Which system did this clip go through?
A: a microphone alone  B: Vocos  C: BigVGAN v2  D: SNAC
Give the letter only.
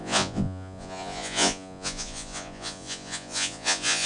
B